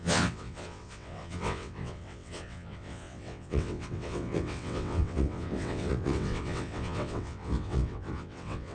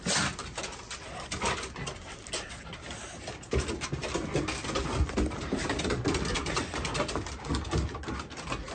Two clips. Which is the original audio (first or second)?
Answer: second